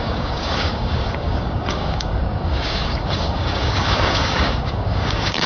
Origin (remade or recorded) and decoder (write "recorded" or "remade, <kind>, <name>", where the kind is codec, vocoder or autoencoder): remade, codec, DAC